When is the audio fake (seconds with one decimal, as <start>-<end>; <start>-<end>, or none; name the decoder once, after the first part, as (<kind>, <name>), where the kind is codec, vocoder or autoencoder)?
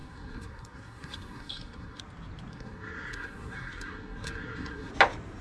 0.0-2.0 (codec, SNAC); 2.5-4.9